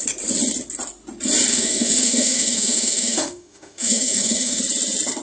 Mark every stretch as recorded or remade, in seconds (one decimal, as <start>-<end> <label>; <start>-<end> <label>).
0.0-1.5 recorded; 1.5-4.6 remade; 4.6-5.2 recorded